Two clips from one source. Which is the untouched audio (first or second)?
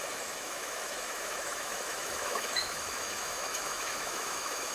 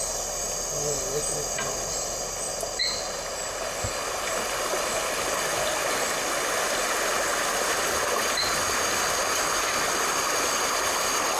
second